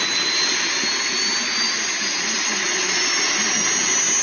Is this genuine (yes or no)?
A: yes